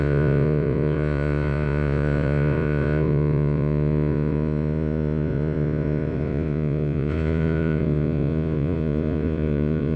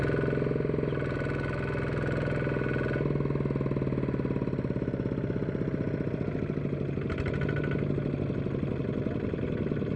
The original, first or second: second